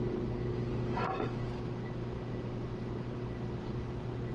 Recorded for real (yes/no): yes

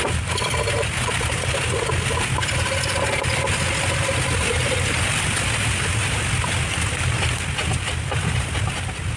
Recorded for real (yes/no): yes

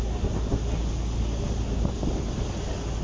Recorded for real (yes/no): yes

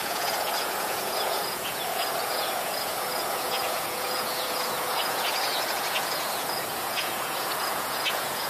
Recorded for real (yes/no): no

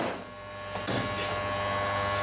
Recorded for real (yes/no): yes